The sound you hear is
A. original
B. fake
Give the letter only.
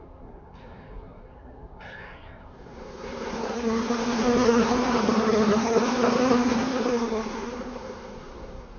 B